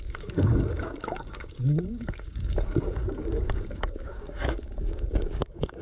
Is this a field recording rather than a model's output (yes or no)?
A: no